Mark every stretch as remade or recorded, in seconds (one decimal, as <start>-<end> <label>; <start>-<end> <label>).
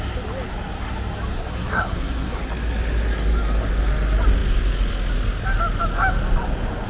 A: 0.0-1.4 recorded; 1.4-2.5 remade; 2.5-6.9 recorded